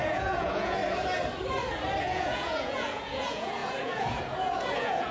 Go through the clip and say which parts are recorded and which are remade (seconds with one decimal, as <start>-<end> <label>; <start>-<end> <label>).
0.0-0.8 remade; 0.8-2.0 recorded; 2.0-5.1 remade